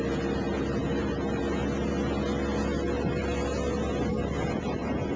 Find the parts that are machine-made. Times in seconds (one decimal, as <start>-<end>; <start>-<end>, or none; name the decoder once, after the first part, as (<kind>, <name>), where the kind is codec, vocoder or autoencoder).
none